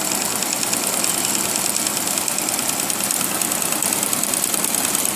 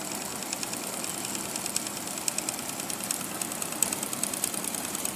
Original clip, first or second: first